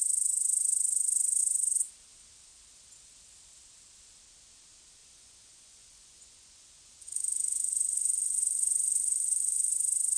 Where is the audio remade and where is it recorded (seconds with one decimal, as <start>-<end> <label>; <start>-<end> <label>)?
0.0-5.0 recorded; 5.0-9.7 remade; 9.7-10.2 recorded